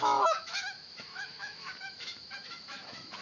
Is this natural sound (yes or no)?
no